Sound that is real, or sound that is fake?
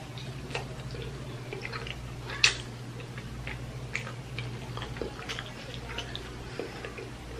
real